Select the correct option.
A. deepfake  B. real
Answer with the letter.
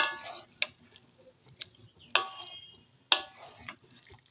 B